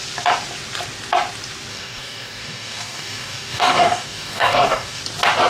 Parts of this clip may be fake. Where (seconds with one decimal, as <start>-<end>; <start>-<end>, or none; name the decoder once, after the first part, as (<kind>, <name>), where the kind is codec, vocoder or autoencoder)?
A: 1.7-5.0 (codec, DAC)